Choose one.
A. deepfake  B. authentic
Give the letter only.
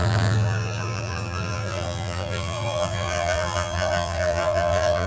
A